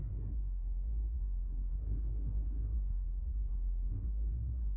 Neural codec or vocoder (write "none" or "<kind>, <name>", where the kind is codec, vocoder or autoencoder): codec, SNAC